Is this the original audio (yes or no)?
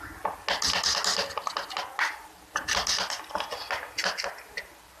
yes